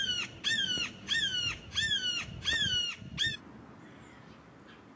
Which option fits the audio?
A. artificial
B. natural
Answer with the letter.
B